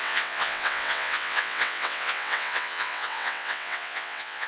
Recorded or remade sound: remade